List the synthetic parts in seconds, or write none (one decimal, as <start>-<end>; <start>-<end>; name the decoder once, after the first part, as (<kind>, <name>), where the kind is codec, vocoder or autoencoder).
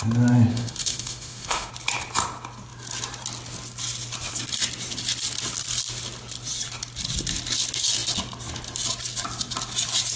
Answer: 0.5-1.7 (autoencoder, DAC-VAE)